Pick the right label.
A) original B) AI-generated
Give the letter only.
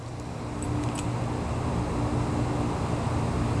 A